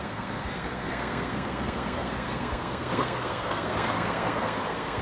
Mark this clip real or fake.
fake